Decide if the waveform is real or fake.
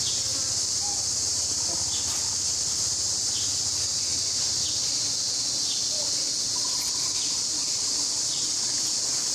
real